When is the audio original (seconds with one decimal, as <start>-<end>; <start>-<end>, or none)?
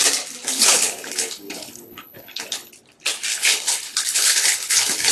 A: 0.0-0.5; 2.7-3.3